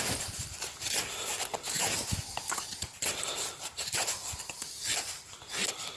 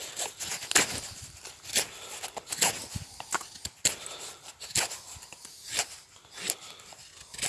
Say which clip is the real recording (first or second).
second